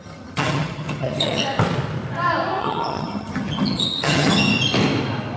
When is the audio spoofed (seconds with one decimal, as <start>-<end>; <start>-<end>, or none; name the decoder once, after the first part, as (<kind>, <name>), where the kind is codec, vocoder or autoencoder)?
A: 0.0-1.4 (vocoder, HiFi-GAN); 2.6-4.5

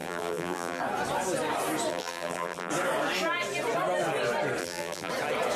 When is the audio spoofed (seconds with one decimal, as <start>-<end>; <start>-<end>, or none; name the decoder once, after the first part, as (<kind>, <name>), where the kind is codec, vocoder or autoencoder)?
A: 0.0-0.8 (vocoder, BigVGAN v2); 1.9-2.7; 4.6-5.1